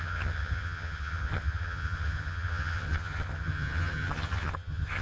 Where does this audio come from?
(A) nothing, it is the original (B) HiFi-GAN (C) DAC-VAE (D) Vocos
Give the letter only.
B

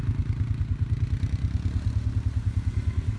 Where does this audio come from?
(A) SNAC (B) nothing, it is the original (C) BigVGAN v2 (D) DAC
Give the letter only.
B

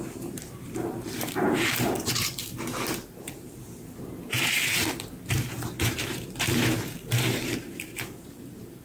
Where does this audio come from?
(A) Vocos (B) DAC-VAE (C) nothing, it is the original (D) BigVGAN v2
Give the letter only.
D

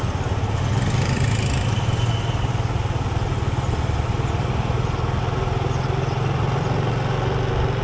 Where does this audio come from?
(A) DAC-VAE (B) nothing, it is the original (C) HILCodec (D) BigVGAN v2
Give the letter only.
B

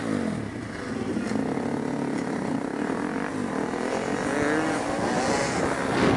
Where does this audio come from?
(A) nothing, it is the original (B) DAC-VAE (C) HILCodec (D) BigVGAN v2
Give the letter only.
A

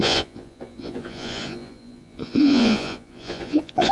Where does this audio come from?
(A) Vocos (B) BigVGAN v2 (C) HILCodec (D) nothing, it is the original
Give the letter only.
A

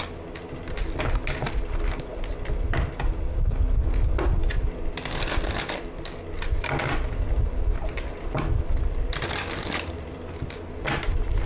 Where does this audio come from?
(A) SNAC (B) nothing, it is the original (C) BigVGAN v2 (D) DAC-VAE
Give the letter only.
B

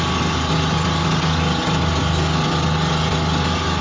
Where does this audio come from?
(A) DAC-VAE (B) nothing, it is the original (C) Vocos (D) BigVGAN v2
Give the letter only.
B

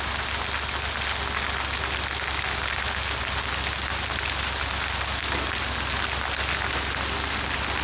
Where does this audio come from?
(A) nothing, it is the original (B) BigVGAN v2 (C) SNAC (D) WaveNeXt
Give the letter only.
A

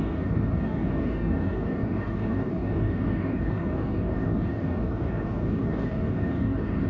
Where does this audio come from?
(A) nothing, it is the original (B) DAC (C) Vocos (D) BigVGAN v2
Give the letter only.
B